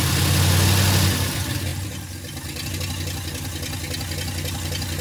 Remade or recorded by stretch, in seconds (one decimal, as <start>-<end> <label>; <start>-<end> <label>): 0.0-5.0 recorded